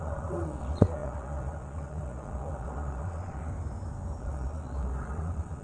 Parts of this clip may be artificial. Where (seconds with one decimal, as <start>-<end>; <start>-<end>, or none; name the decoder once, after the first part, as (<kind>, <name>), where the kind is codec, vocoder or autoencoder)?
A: 0.0-3.5 (vocoder, Vocos); 4.2-5.6